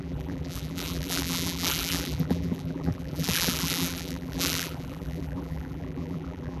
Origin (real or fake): fake